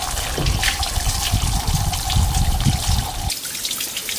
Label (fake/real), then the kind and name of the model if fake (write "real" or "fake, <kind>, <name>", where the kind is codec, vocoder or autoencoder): real